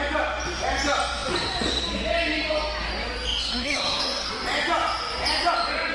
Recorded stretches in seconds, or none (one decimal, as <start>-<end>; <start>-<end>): 0.0-3.4; 4.3-5.9